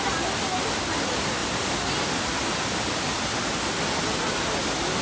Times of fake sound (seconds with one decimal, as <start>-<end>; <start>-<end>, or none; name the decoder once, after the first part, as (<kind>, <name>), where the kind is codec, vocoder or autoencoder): none